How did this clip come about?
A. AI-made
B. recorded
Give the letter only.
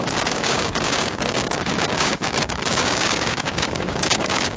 A